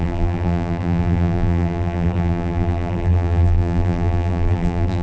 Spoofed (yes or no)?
yes